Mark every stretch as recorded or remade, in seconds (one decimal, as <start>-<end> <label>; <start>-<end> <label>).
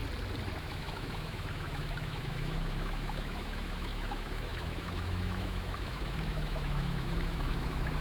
0.0-0.6 recorded; 0.6-8.0 remade